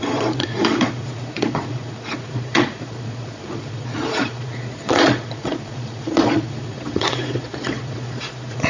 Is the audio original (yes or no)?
no